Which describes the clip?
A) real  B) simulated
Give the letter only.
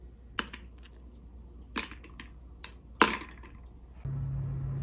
A